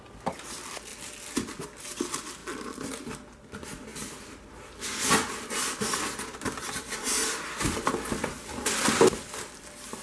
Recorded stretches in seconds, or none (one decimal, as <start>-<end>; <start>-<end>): 0.0-0.9; 1.6-2.4; 3.1-3.9; 7.8-10.0